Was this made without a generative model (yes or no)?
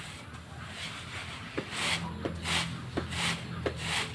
yes